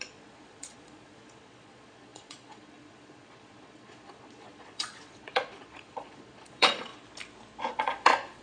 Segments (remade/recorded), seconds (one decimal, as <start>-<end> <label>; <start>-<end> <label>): 0.0-6.9 remade; 6.9-7.7 recorded; 7.7-8.4 remade